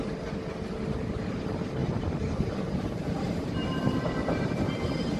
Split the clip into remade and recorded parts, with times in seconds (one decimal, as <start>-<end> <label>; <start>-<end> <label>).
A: 0.0-1.8 recorded; 1.8-5.2 remade